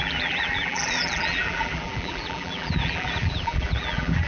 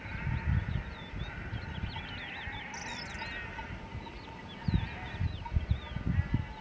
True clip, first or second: second